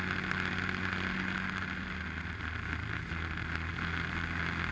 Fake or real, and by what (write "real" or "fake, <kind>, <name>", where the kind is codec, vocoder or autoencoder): real